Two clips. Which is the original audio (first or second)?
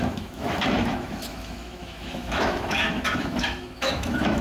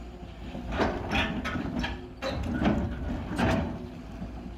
second